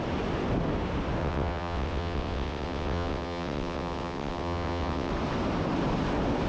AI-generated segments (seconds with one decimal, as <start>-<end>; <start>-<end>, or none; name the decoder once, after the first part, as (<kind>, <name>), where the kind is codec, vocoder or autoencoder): 1.2-5.1 (vocoder, WaveNeXt)